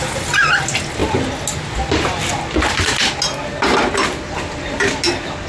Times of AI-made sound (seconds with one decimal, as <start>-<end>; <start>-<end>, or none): none